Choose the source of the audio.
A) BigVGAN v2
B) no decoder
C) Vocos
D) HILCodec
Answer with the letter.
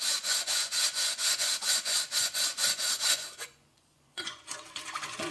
C